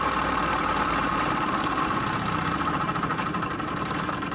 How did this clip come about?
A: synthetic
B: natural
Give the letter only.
A